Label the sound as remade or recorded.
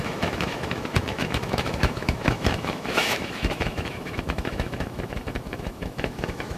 remade